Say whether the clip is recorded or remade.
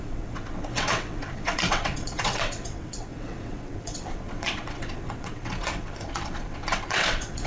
remade